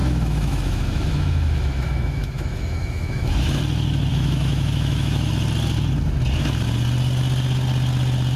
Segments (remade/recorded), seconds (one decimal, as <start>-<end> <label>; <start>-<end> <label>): 0.0-3.6 remade; 3.6-4.1 recorded; 4.1-5.3 remade; 5.3-8.4 recorded